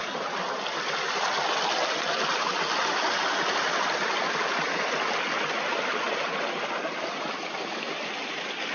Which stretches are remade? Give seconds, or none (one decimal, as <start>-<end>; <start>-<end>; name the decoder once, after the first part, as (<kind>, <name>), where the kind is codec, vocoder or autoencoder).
none